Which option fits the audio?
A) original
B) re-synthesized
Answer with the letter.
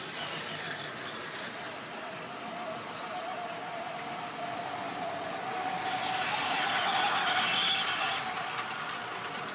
A